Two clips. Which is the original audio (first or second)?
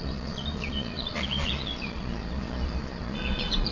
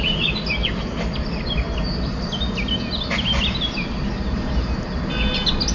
second